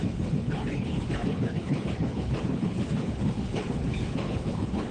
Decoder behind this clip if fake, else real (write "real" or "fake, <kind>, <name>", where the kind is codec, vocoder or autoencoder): fake, codec, HILCodec